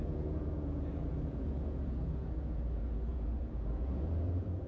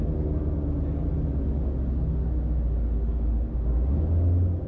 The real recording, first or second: second